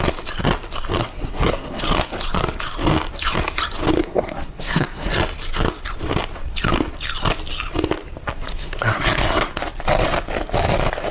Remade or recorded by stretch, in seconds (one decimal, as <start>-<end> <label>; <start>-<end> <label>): 0.0-1.0 recorded; 1.0-1.8 remade; 1.8-4.0 recorded; 4.0-5.1 remade; 5.1-8.5 recorded; 8.5-9.5 remade; 9.5-11.1 recorded